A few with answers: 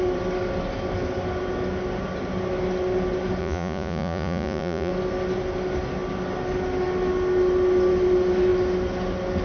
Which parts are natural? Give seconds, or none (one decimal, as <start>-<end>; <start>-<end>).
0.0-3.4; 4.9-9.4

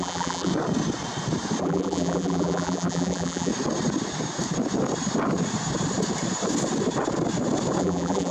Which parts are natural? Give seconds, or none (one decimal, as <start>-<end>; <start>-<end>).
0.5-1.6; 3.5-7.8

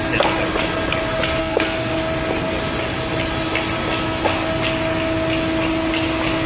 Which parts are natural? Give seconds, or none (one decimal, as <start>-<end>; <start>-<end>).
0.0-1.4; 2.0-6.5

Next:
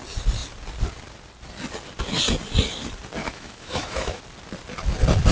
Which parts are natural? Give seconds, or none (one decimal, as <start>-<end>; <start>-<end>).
0.0-3.2; 4.2-5.3